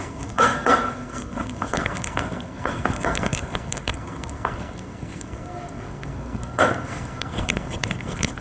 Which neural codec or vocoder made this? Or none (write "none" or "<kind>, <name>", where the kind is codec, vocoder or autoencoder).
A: codec, SNAC